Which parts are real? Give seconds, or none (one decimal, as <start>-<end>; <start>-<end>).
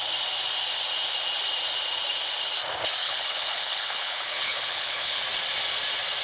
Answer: 0.0-3.0; 5.2-6.2